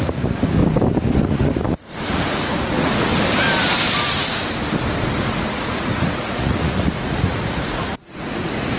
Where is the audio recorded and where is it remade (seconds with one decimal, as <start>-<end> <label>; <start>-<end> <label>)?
0.0-0.6 remade; 0.6-1.1 recorded; 1.1-3.1 remade; 3.1-5.2 recorded; 5.2-8.8 remade